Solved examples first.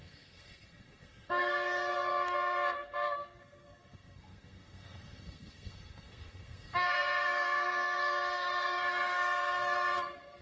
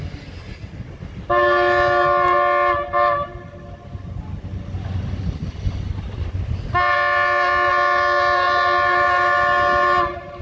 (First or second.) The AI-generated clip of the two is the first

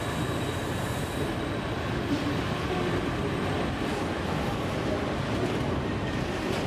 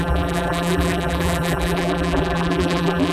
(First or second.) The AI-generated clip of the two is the second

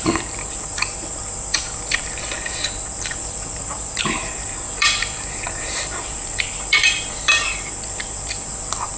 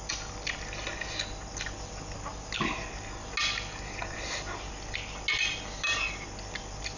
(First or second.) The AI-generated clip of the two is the first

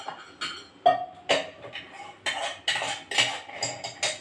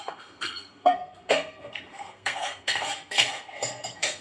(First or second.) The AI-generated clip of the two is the second